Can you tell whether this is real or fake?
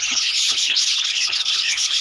fake